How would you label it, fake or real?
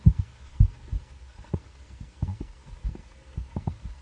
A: fake